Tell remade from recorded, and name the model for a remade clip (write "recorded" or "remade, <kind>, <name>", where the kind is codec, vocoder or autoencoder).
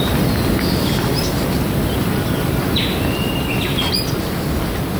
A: recorded